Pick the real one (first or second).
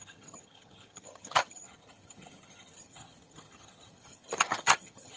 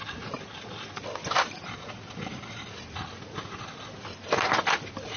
second